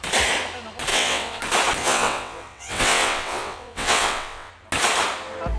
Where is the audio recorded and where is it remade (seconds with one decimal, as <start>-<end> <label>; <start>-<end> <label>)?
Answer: 0.0-0.9 recorded; 0.9-1.4 remade; 1.4-1.8 recorded; 1.8-4.5 remade; 4.5-5.6 recorded

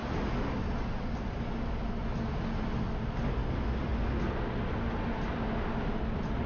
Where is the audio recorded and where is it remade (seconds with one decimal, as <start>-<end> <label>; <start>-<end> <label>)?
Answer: 0.0-6.5 recorded

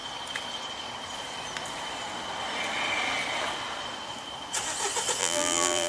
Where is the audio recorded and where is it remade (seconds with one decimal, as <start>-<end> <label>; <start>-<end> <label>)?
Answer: 0.0-5.2 recorded; 5.2-5.9 remade

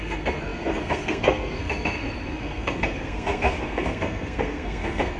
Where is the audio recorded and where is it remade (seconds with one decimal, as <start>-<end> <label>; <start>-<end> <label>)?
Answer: 0.0-5.2 remade

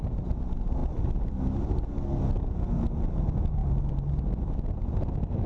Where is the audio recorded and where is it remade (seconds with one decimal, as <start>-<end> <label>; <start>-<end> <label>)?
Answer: 0.0-5.5 recorded

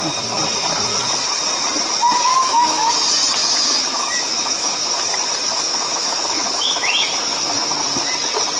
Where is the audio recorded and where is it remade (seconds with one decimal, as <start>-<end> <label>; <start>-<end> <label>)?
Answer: 0.0-2.3 recorded; 2.3-2.9 remade; 2.9-3.4 recorded; 3.4-4.9 remade; 4.9-5.5 recorded; 5.5-7.2 remade; 7.2-8.6 recorded

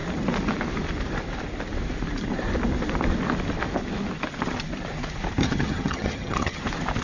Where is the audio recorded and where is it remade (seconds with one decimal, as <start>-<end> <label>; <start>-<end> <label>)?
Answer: 0.0-5.4 recorded; 5.4-6.6 remade; 6.6-7.0 recorded

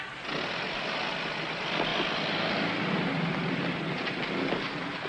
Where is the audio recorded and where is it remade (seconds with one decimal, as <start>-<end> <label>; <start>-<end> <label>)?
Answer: 0.0-5.1 recorded